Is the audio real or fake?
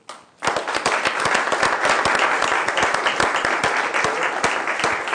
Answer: real